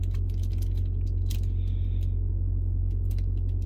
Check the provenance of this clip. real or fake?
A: real